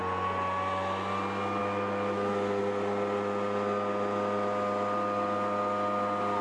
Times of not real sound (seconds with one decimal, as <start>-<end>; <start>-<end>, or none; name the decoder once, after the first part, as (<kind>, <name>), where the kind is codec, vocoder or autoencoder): 1.6-2.6 (autoencoder, DAC-VAE)